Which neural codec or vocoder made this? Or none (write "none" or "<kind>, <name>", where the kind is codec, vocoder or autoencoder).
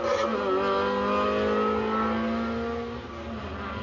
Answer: none